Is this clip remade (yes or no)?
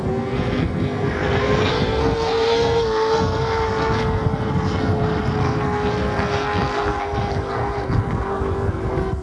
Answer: yes